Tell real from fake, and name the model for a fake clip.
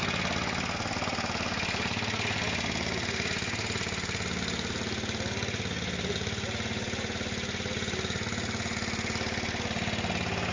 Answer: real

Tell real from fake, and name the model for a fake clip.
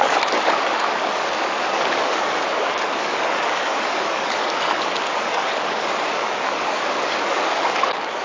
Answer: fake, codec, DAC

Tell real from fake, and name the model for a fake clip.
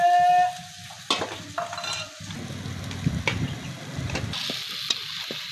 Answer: real